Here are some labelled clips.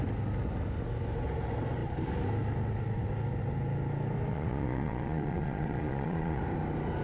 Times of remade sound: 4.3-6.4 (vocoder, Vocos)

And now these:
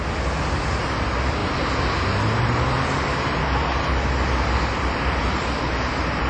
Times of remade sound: none

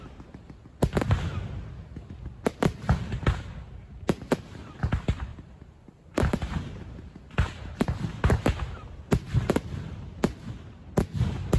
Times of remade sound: 5.3-8.3 (vocoder, BigVGAN v2)

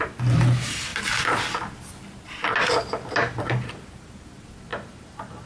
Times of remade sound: none

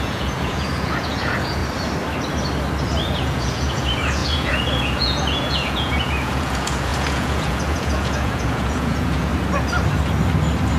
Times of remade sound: 0.0-1.6 (vocoder, Vocos); 3.0-9.3

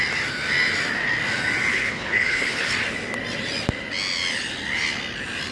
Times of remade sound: 1.7-2.7 (codec, HILCodec)

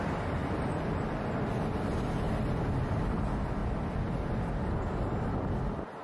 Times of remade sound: none